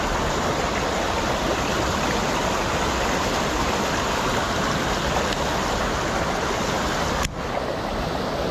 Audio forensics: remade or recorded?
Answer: recorded